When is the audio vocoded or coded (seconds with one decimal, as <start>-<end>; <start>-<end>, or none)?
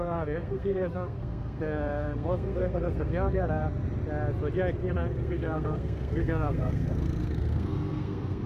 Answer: 0.0-3.6; 4.9-8.5